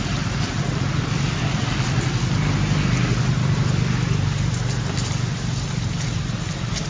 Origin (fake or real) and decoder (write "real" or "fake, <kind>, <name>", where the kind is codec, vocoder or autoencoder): real